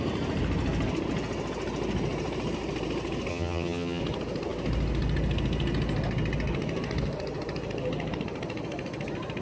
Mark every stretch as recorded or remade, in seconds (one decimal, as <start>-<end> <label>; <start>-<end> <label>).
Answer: 0.0-3.3 recorded; 3.3-4.0 remade; 4.0-9.4 recorded